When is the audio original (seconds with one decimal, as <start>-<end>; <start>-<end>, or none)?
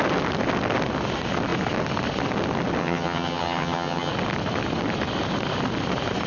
0.0-2.8; 4.1-6.3